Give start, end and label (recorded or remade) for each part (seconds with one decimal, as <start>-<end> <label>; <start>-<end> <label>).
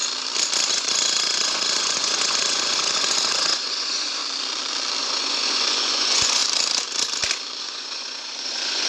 0.0-0.7 recorded; 0.7-4.2 remade; 4.2-5.0 recorded; 5.0-6.4 remade; 6.4-7.6 recorded; 7.6-8.9 remade